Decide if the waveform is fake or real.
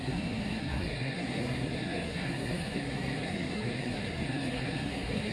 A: fake